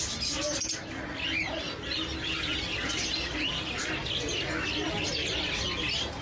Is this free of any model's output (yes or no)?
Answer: yes